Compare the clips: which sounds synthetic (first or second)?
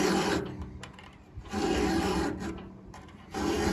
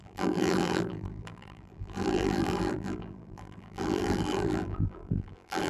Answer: second